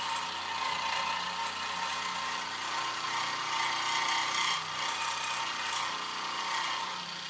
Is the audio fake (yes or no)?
no